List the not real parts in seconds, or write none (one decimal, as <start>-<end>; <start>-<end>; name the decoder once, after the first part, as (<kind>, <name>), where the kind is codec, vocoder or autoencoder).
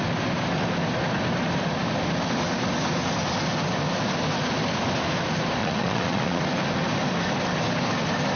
5.6-6.4 (vocoder, Vocos)